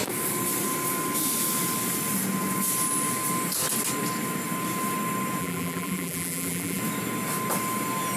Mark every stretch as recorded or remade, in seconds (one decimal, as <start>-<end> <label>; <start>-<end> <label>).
0.0-5.4 recorded; 5.4-6.8 remade; 6.8-8.2 recorded